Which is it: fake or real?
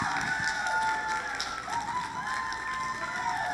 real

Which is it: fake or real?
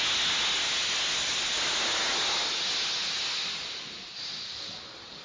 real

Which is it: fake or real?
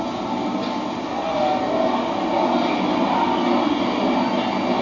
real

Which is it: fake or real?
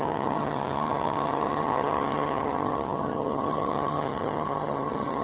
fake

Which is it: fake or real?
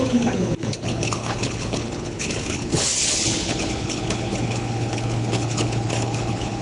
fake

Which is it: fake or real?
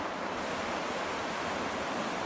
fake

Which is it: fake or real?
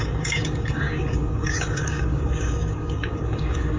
fake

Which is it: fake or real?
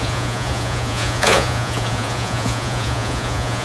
fake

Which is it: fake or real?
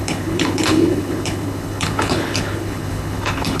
fake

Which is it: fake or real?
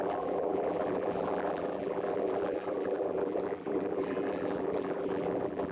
fake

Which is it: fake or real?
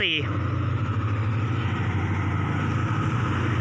real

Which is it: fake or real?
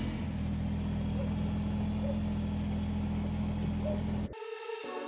real